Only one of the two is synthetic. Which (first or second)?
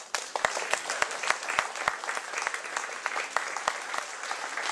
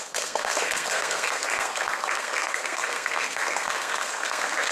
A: second